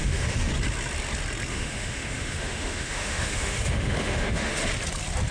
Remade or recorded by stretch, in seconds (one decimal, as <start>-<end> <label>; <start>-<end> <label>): 0.0-0.5 remade; 0.5-1.5 recorded; 1.5-4.7 remade; 4.7-5.3 recorded